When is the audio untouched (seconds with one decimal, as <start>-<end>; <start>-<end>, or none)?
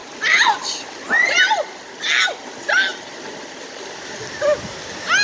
1.8-2.9; 4.2-5.2